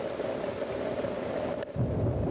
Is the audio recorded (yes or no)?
yes